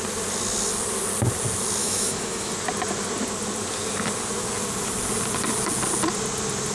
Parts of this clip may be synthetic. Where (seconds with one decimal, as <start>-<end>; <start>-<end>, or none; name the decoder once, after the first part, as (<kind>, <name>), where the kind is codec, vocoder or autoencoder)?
1.8-2.5 (autoencoder, DAC-VAE)